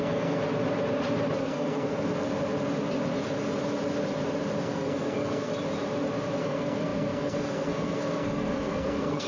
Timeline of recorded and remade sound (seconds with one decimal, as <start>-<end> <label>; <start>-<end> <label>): 0.0-0.4 remade; 0.4-1.4 recorded; 1.4-2.1 remade; 2.1-4.6 recorded; 4.6-5.5 remade; 5.5-6.4 recorded; 6.4-9.3 remade